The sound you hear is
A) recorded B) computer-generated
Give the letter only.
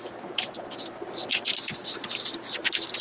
A